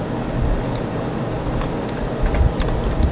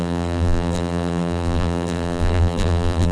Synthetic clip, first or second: second